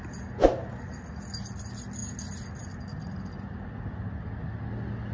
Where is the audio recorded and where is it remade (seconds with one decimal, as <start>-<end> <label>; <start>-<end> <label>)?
0.0-5.1 recorded